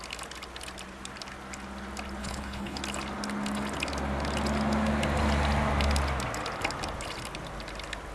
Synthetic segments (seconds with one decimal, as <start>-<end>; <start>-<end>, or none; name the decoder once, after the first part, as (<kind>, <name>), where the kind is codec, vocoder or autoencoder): 2.2-2.8 (codec, HILCodec)